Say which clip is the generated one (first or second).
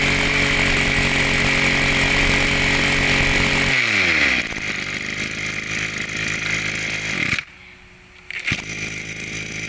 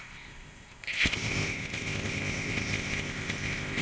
second